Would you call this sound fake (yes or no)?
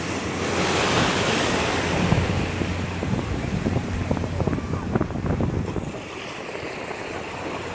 no